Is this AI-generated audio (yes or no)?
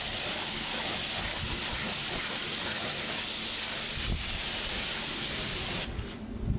no